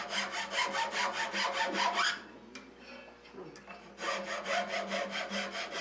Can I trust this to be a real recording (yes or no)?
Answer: yes